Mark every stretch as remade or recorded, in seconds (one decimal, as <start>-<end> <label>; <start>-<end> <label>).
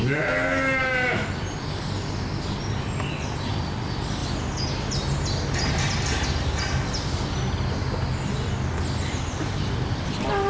0.0-10.5 recorded